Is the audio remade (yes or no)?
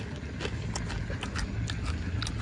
no